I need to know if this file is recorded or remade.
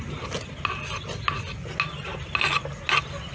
recorded